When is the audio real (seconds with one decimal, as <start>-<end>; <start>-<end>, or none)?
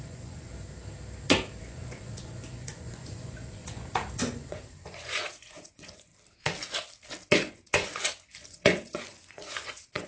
0.5-1.6; 6.1-7.3